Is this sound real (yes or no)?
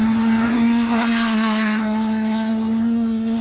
no